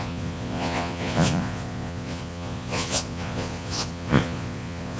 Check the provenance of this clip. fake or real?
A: fake